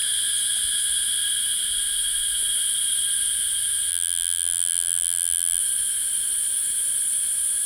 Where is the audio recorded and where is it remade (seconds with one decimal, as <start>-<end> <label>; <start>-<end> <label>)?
0.0-3.9 recorded; 3.9-5.6 remade; 5.6-7.7 recorded